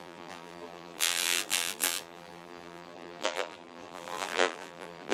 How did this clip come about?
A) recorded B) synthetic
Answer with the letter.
B